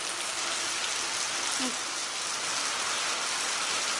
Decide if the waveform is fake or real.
real